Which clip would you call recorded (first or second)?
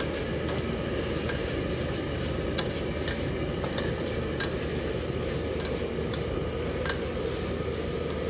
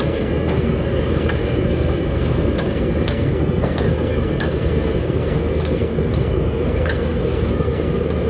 first